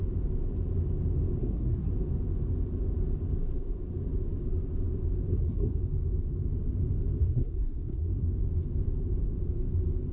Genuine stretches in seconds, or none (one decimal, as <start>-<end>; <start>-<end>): 0.0-1.4; 1.9-5.3; 5.8-7.2; 8.2-10.1